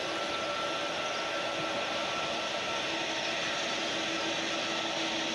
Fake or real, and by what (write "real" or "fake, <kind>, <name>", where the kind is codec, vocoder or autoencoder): real